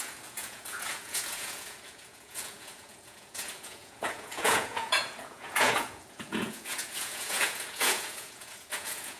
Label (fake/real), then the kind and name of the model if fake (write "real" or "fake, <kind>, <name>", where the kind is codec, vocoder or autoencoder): fake, vocoder, Vocos